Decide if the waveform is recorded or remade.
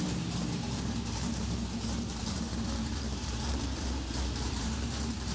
remade